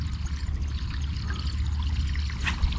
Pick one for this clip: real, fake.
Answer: real